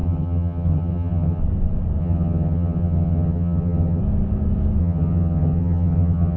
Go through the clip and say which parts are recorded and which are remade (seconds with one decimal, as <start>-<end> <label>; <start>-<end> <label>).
0.0-1.4 remade; 1.4-2.0 recorded; 2.0-4.0 remade; 4.0-4.8 recorded; 4.8-6.4 remade